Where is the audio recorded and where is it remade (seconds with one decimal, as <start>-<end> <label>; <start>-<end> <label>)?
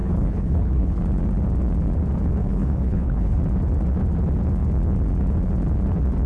0.0-1.0 remade; 1.0-2.4 recorded; 2.4-3.4 remade; 3.4-6.3 recorded